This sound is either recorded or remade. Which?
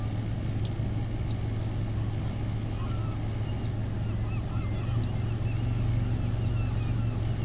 recorded